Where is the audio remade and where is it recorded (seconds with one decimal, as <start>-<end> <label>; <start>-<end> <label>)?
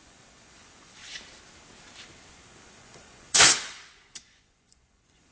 0.0-1.0 remade; 1.0-2.3 recorded; 2.3-5.3 remade